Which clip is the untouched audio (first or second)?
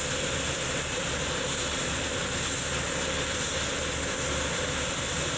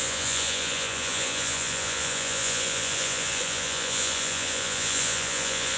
first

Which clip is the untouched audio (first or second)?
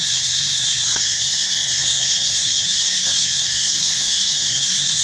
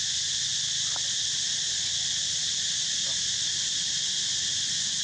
second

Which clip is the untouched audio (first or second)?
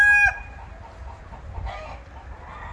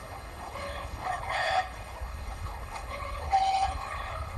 first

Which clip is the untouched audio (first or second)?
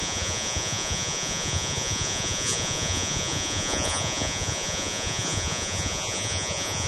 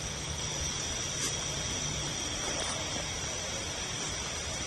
second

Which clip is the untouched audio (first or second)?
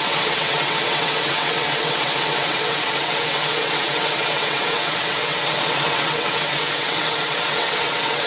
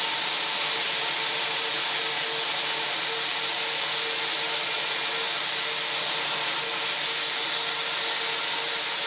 second